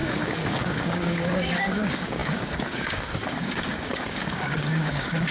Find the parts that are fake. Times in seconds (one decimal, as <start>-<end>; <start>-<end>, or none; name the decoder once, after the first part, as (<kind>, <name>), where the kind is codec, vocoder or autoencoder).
0.0-5.3 (codec, DAC)